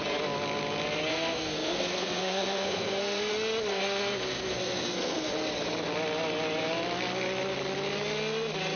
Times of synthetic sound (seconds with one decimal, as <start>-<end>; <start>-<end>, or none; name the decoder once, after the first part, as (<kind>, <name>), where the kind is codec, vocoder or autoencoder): 1.1-3.3 (codec, SNAC); 3.7-5.3